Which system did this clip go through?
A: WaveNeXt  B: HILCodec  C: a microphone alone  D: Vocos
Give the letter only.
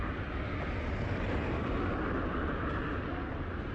C